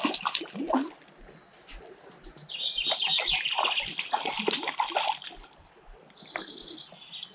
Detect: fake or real real